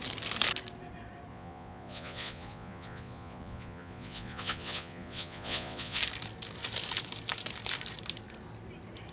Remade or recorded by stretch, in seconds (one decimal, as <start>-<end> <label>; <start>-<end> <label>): 0.0-1.3 recorded; 1.3-6.0 remade; 6.0-9.1 recorded